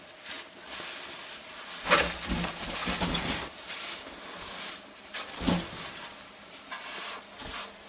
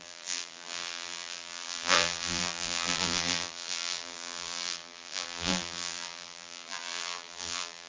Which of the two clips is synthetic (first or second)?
second